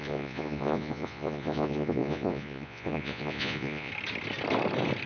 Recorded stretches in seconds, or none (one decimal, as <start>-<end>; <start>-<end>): 3.9-5.1